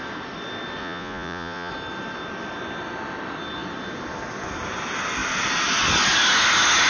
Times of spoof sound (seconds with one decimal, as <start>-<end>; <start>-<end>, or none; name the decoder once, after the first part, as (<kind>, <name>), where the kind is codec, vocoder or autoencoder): 0.8-1.7 (vocoder, Vocos)